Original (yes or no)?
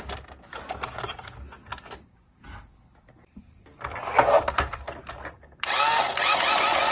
yes